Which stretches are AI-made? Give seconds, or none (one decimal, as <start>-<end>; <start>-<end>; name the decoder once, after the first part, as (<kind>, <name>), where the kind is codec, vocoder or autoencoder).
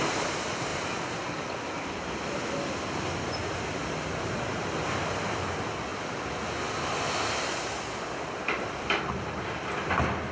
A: none